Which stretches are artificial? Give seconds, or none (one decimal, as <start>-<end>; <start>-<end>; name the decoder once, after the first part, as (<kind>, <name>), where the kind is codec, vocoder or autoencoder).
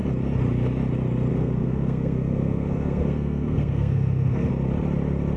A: 1.3-4.5 (codec, SNAC)